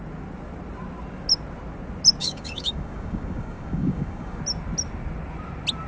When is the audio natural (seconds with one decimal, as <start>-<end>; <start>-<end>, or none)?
0.0-2.2; 4.4-5.9